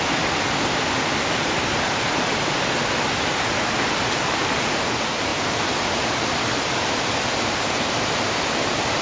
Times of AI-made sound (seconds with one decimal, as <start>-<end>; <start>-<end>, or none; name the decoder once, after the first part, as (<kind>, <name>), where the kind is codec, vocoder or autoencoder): 5.3-6.1 (vocoder, BigVGAN v2)